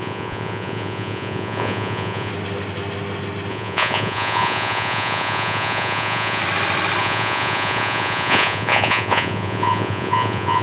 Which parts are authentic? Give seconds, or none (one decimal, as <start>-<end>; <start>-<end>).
2.3-3.5; 6.4-7.0